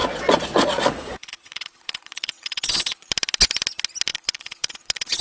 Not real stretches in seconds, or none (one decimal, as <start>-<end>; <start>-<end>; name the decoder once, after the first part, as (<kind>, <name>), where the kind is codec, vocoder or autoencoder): 0.0-3.1 (vocoder, Vocos); 4.1-5.2